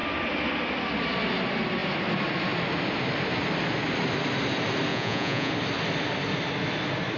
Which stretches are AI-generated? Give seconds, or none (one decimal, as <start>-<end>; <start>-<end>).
4.9-5.5